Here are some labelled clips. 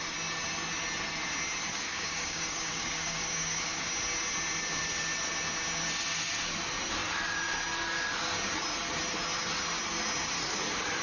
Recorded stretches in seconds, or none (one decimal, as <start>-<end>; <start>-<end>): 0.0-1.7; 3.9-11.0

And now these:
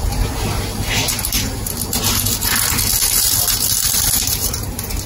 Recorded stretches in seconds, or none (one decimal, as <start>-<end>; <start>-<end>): 0.0-5.1

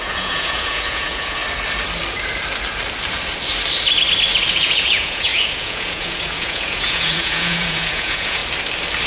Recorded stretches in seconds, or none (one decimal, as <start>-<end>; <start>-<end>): 1.4-4.5; 8.4-9.1

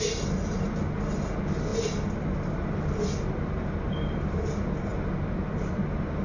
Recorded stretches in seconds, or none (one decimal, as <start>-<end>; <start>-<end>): 0.0-6.2

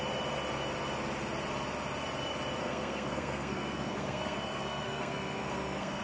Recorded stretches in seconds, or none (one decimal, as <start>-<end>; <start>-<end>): 0.0-2.6

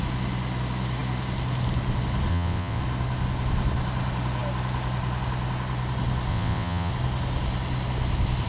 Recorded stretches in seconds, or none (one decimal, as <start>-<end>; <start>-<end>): 0.0-2.3; 2.8-6.3; 6.9-8.5